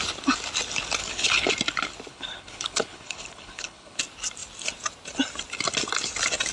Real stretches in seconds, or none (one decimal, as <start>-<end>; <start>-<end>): 0.0-1.0; 1.5-2.1; 4.0-6.5